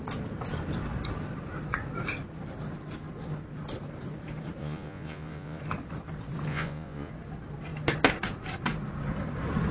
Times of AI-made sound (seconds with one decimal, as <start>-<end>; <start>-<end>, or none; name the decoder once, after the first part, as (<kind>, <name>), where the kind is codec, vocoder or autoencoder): 4.6-5.6 (vocoder, Vocos); 6.5-7.1